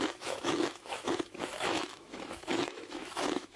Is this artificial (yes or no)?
yes